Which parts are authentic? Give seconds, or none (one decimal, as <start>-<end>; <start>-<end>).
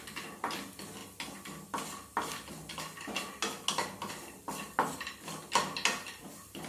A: 0.0-6.7